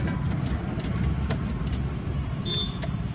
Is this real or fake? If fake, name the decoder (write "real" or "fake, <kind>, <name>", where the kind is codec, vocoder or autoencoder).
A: real